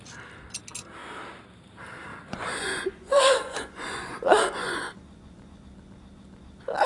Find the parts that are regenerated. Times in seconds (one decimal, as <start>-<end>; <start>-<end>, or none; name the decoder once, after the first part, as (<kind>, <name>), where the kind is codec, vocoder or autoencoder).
2.1-5.6 (vocoder, Vocos)